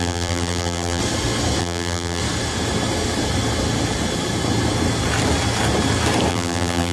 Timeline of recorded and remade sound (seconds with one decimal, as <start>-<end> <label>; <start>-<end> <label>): 0.0-1.0 remade; 1.0-1.6 recorded; 1.6-2.2 remade; 2.2-6.3 recorded; 6.3-6.9 remade